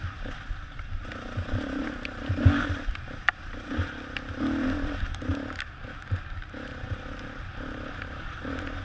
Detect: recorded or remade recorded